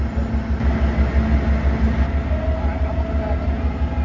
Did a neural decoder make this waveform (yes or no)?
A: no